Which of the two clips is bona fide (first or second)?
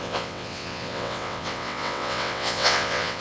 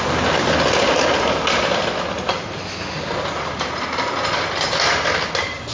second